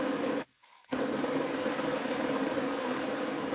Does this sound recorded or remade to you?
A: remade